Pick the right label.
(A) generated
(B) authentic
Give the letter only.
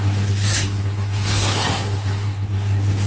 A